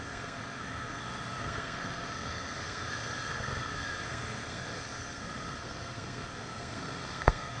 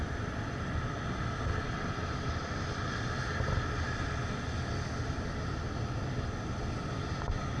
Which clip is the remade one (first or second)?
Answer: first